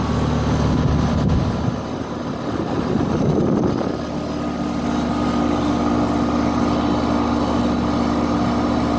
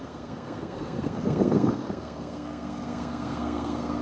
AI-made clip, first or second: second